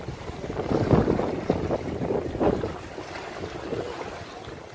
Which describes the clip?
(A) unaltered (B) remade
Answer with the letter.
A